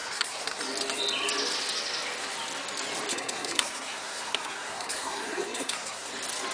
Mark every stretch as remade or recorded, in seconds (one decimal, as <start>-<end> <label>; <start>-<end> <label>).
0.0-0.6 remade; 0.6-3.1 recorded; 3.1-6.1 remade; 6.1-6.5 recorded

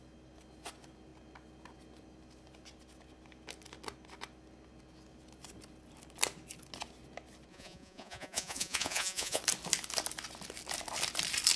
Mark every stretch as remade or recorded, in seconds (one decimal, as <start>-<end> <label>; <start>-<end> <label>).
0.0-7.5 recorded; 7.5-9.4 remade; 9.4-11.6 recorded

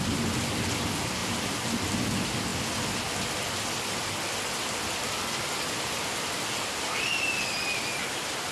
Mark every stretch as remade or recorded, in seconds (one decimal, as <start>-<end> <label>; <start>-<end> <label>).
0.0-2.5 recorded; 2.5-3.1 remade; 3.1-8.5 recorded

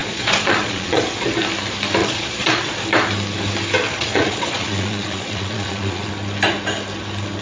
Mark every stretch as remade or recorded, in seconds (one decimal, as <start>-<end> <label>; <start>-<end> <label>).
0.0-1.0 remade; 1.0-2.0 recorded; 2.0-2.8 remade; 2.8-3.9 recorded; 3.9-6.1 remade; 6.1-7.4 recorded

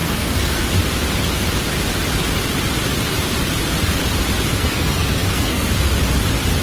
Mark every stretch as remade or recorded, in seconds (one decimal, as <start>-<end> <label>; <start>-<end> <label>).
0.0-0.7 remade; 0.7-4.5 recorded; 4.5-5.7 remade; 5.7-6.6 recorded

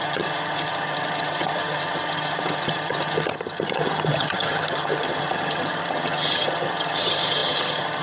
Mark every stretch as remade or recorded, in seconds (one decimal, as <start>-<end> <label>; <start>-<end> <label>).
0.0-8.0 remade